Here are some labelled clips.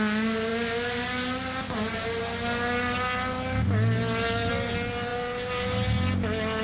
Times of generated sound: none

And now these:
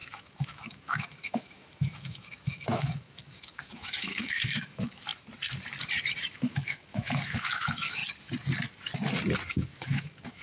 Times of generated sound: 0.0-5.1 (autoencoder, DAC-VAE); 6.3-8.0; 9.5-10.4